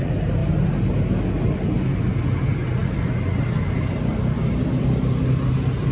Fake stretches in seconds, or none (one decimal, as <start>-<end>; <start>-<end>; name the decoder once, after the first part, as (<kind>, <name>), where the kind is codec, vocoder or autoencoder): none